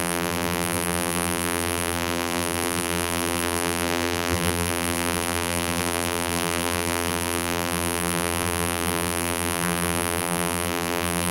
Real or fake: fake